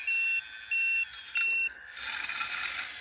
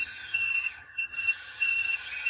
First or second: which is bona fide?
first